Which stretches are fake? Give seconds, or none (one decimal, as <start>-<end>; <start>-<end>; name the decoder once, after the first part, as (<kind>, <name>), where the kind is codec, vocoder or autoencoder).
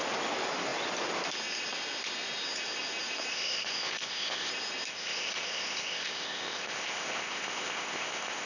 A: 3.3-4.5 (codec, ZipCodec); 4.9-8.5